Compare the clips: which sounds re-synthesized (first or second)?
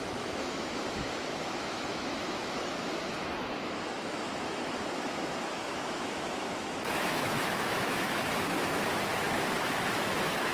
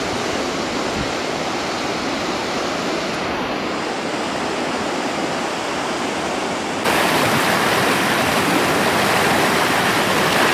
first